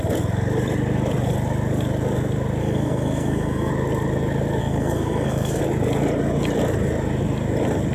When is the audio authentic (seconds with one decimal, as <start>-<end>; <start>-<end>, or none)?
0.0-2.6; 3.7-4.6; 5.6-7.9